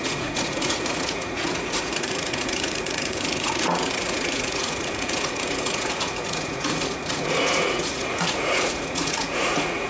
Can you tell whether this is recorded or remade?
remade